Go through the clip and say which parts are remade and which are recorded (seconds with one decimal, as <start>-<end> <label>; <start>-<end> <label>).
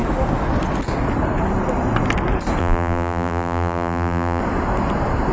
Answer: 0.0-2.6 recorded; 2.6-4.4 remade; 4.4-5.3 recorded